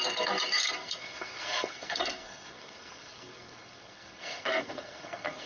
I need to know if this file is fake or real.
fake